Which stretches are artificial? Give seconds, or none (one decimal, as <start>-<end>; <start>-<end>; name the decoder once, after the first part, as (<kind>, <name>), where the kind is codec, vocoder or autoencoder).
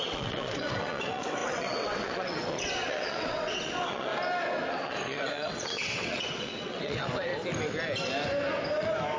0.0-4.1 (vocoder, WaveNeXt); 4.7-7.3